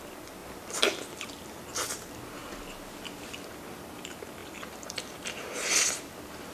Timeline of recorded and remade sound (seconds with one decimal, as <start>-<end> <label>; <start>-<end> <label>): 0.0-0.4 recorded; 0.4-1.9 remade; 1.9-4.4 recorded; 4.4-5.2 remade; 5.2-6.5 recorded